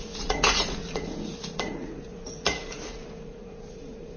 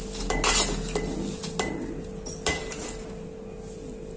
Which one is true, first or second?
second